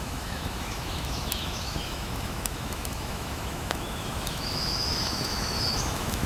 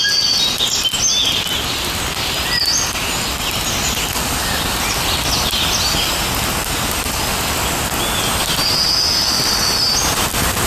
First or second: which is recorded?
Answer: second